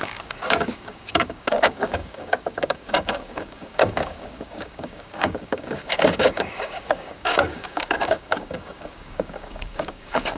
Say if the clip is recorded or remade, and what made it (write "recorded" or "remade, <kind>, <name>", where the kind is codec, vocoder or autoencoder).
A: remade, codec, DAC